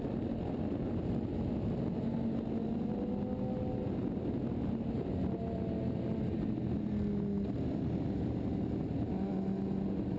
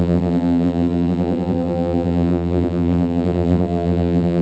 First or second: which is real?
first